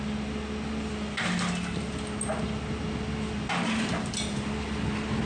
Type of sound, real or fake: real